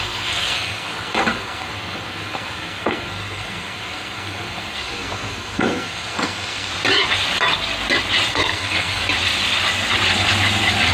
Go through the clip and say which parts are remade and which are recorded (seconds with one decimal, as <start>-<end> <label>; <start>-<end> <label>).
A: 0.0-6.7 remade; 6.7-8.3 recorded; 8.3-9.0 remade; 9.0-10.9 recorded